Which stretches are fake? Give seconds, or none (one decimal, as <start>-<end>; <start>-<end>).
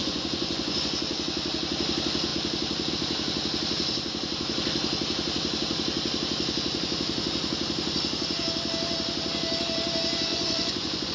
0.0-0.9; 10.3-11.1